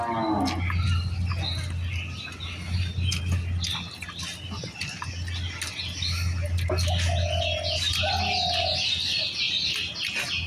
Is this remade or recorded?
recorded